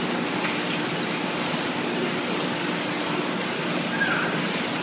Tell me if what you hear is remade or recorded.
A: recorded